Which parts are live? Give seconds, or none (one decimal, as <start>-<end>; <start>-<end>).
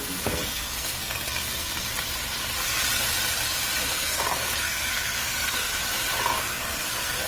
1.9-3.8; 5.7-6.4